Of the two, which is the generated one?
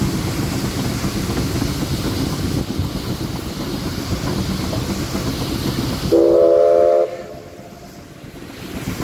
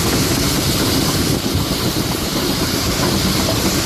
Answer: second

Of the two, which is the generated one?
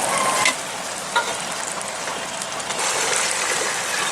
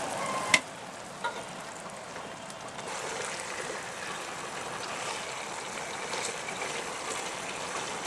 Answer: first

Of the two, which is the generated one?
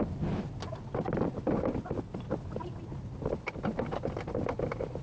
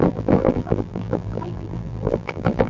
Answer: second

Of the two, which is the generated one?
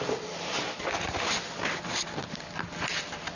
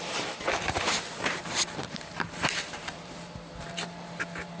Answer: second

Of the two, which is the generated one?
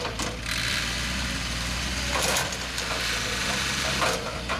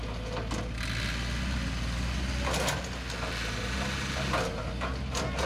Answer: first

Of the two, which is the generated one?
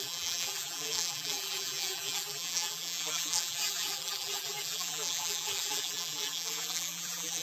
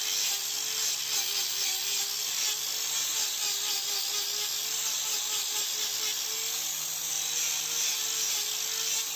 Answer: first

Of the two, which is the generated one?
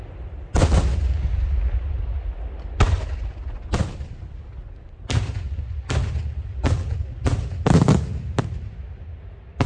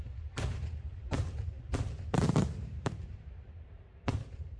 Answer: second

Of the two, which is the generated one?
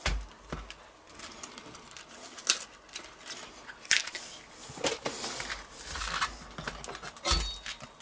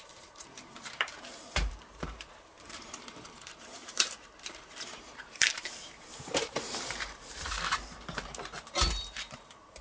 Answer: second